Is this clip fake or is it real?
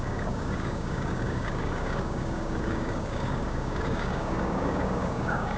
fake